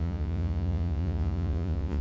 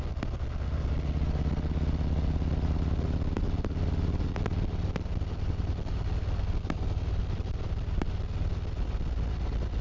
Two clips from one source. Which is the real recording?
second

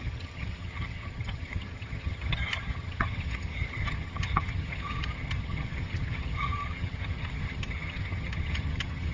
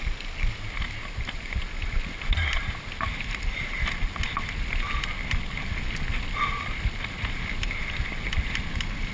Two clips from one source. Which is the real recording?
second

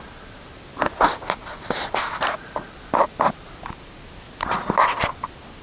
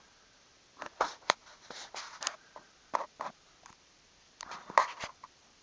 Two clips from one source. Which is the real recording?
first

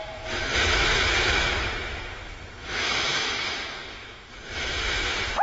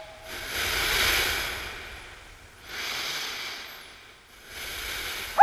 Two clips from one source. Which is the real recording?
second